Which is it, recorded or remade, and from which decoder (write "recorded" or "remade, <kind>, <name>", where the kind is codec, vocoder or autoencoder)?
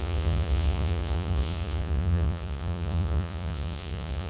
remade, vocoder, Vocos